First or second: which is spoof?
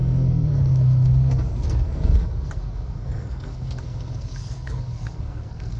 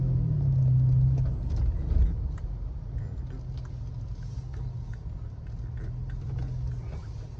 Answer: first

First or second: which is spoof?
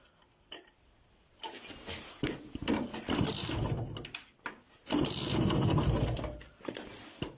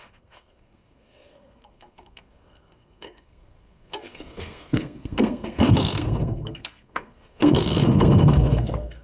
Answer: second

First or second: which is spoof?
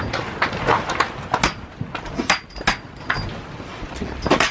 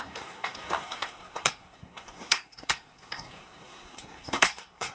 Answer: second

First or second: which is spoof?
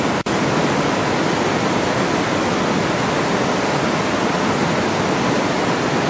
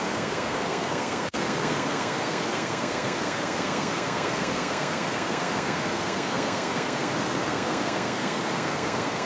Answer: second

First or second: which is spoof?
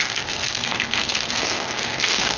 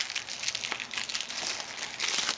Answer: first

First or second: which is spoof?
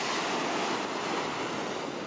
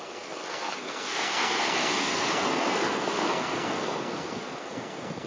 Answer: second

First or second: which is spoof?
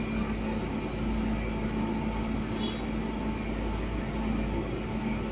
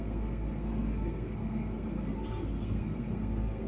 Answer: second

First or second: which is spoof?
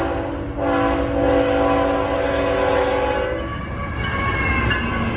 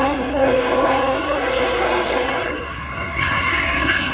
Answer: second